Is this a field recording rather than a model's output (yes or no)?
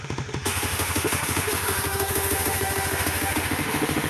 no